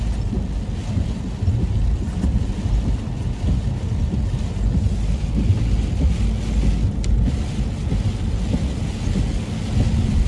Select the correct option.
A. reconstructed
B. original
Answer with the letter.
B